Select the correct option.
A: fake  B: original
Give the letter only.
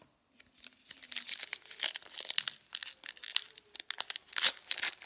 B